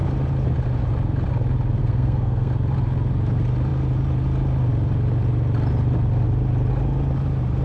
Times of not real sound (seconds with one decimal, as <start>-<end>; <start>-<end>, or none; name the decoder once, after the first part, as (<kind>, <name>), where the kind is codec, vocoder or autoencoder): 1.8-2.5 (codec, SNAC)

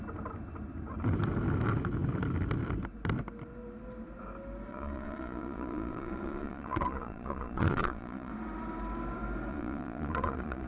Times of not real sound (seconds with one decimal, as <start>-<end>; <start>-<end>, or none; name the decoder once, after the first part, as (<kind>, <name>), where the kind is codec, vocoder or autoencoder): 4.7-8.3 (vocoder, Vocos); 9.5-10.7

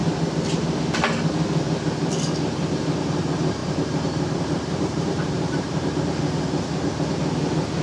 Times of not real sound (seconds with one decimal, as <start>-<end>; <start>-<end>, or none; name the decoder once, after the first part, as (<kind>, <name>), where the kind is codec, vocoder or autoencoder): 3.6-5.9 (vocoder, BigVGAN v2)